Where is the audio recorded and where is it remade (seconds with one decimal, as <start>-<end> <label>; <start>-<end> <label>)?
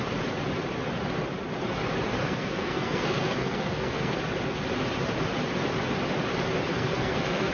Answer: 0.0-2.2 recorded; 2.2-4.2 remade; 4.2-6.7 recorded; 6.7-7.5 remade